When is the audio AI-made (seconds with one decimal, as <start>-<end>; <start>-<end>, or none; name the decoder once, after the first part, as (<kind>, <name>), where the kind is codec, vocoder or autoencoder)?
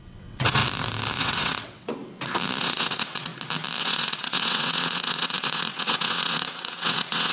0.0-0.6 (vocoder, WaveNeXt); 1.2-2.0; 2.6-3.3; 3.8-7.3